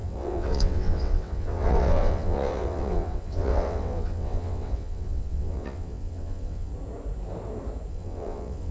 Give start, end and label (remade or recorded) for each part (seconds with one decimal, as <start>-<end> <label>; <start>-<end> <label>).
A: 0.0-6.7 remade; 6.7-7.9 recorded; 7.9-8.7 remade